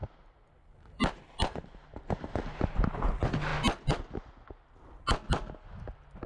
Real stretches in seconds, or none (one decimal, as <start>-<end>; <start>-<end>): 3.1-6.3